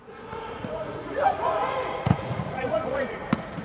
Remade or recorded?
remade